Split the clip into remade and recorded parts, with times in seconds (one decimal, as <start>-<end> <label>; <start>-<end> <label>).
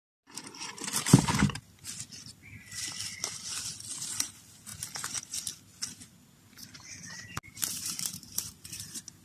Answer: 0.0-7.6 recorded; 7.6-9.2 remade